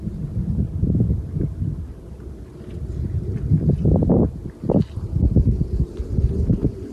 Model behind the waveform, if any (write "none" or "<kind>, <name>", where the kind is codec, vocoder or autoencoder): none